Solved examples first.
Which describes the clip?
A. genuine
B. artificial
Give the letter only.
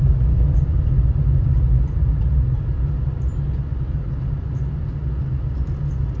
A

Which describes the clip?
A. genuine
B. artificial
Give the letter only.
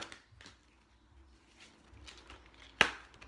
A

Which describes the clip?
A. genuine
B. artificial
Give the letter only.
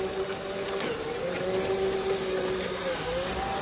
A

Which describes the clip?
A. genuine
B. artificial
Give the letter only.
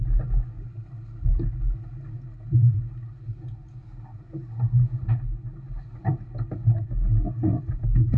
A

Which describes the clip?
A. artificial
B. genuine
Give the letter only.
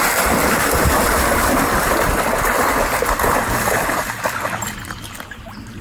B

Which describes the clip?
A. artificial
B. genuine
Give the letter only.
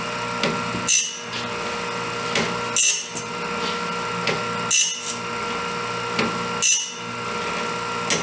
B